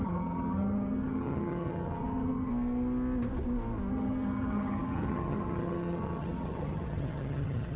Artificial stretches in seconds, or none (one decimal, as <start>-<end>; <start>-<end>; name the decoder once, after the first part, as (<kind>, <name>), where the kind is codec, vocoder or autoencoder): 0.0-2.5 (vocoder, HiFi-GAN); 3.9-7.8